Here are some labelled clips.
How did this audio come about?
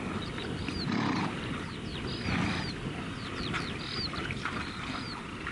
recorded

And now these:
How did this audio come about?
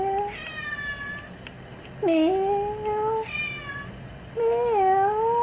recorded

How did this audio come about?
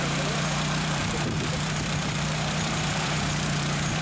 remade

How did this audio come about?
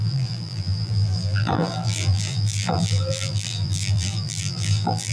remade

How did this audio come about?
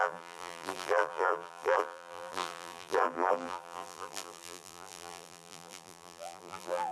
remade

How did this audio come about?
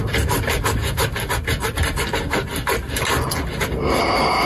recorded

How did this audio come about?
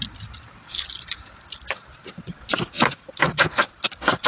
remade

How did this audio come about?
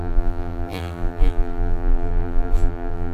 remade